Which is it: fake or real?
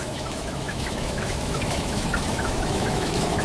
fake